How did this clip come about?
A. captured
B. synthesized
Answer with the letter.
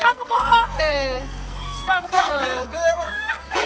B